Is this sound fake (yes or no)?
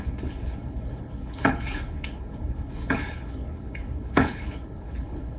yes